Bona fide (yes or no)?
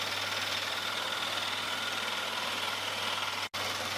yes